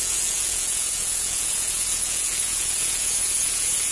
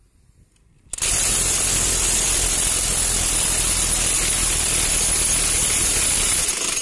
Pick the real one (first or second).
second